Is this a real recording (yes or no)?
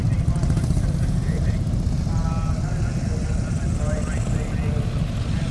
yes